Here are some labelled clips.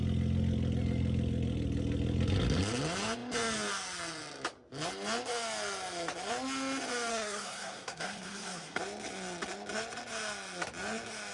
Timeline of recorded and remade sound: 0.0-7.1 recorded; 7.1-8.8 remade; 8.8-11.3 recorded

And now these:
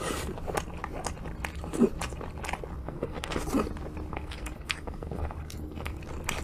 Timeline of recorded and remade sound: 0.0-2.8 recorded; 2.8-3.4 remade; 3.4-4.1 recorded; 4.1-6.0 remade; 6.0-6.4 recorded

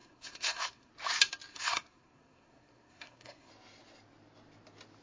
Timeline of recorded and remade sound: 0.0-0.9 remade; 0.9-1.5 recorded; 1.5-3.5 remade; 3.5-5.0 recorded

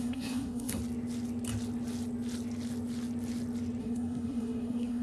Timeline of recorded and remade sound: 0.0-0.8 remade; 0.8-3.8 recorded; 3.8-5.0 remade

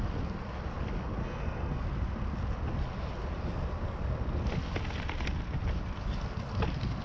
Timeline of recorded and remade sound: 0.0-1.2 recorded; 1.2-1.8 remade; 1.8-7.0 recorded

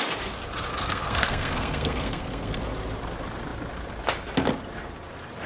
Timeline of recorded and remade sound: 0.0-0.7 recorded; 0.7-2.6 remade; 2.6-5.5 recorded